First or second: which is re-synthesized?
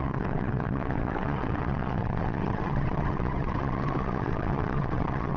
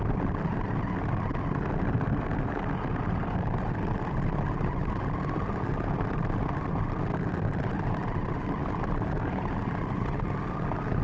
first